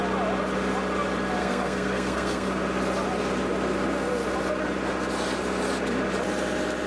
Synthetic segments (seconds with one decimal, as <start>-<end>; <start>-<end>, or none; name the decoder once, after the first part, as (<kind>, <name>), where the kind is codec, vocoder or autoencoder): 1.4-2.6 (codec, SNAC)